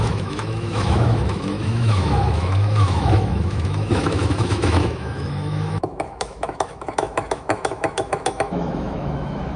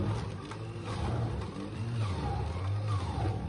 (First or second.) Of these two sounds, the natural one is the second